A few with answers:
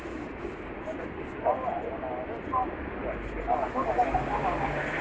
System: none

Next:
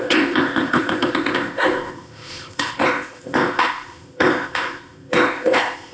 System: codec, ZipCodec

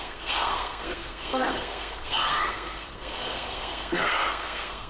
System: codec, SNAC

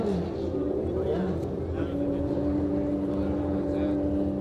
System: none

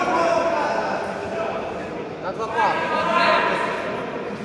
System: none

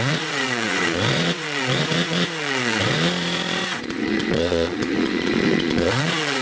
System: vocoder, Vocos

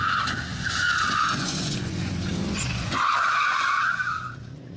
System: vocoder, Vocos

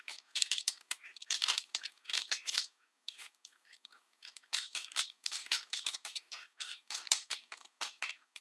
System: codec, DAC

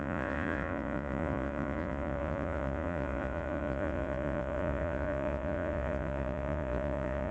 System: vocoder, Vocos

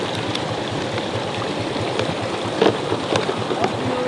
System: none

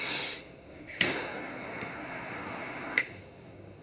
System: codec, SNAC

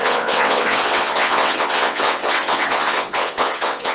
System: vocoder, WaveNeXt